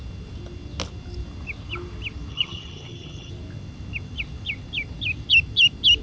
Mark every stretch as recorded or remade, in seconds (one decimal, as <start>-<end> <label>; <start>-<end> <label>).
0.0-2.3 recorded; 2.3-3.3 remade; 3.3-6.0 recorded